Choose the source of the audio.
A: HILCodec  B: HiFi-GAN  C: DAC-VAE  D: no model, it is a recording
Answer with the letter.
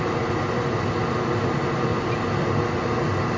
D